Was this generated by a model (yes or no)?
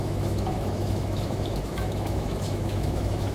yes